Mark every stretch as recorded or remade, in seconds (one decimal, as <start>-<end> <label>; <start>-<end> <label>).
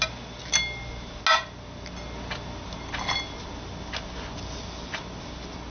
0.0-5.7 recorded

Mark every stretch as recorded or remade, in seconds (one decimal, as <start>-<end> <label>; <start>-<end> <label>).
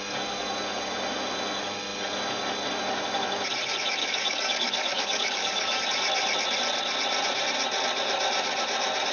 0.0-4.0 recorded; 4.0-5.8 remade; 5.8-9.1 recorded